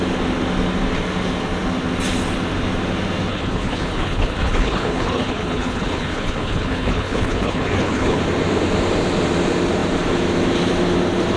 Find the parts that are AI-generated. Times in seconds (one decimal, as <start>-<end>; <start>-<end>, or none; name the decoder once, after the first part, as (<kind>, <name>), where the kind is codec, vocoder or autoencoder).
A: 3.3-8.2 (codec, HILCodec)